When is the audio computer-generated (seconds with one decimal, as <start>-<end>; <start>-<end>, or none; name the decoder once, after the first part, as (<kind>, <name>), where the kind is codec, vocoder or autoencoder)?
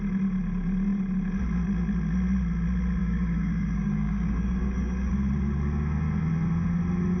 3.0-5.1 (codec, DAC)